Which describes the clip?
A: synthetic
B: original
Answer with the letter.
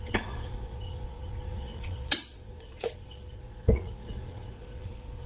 A